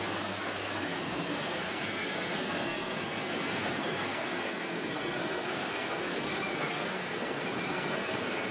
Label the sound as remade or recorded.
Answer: remade